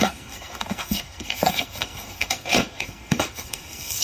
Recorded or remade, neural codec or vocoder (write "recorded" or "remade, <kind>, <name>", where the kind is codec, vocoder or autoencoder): remade, codec, SNAC